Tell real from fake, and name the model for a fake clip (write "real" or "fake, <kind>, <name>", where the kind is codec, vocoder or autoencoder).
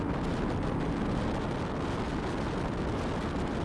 real